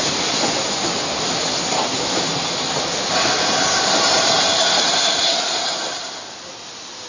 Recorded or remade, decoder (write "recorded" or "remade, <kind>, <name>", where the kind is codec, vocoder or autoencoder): recorded